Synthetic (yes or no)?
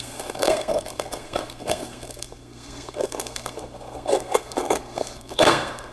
yes